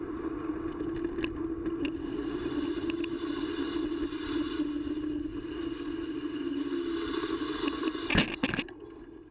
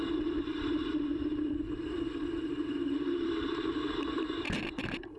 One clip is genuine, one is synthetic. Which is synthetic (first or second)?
second